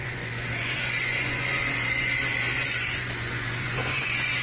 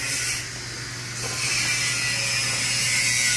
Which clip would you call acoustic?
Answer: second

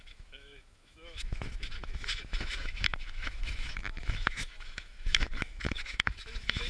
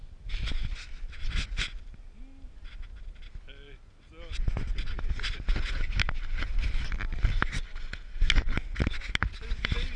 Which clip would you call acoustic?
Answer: second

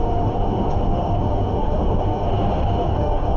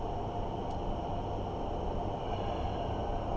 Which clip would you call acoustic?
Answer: second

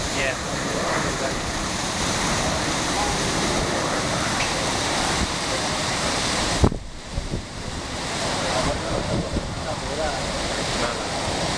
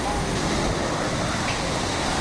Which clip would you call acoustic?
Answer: second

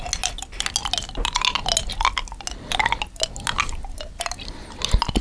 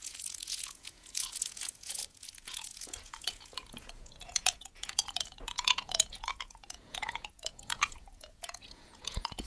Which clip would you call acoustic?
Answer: first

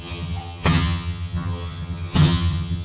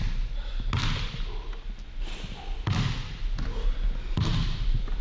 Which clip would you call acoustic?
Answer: second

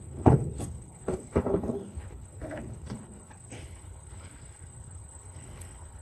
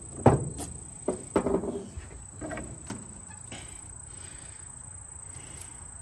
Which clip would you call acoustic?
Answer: second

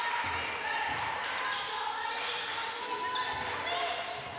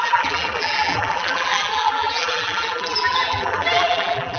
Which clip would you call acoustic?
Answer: first